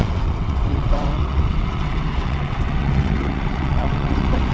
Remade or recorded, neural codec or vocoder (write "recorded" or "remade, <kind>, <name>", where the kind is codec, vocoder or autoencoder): remade, vocoder, WaveNeXt